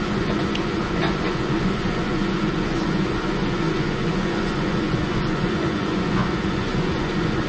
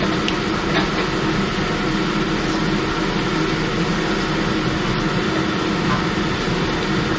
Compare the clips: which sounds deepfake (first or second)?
first